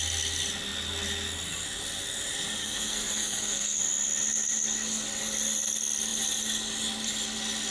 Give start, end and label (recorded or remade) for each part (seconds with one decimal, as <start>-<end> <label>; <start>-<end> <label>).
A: 0.0-2.6 recorded; 2.6-3.8 remade; 3.8-7.7 recorded